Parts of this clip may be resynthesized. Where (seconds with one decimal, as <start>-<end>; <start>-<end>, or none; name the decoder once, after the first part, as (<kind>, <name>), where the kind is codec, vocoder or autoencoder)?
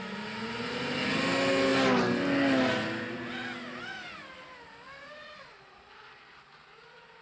none